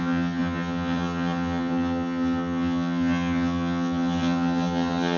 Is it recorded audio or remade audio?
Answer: remade